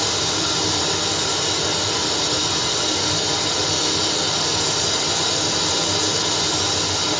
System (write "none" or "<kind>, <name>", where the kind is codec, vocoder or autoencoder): none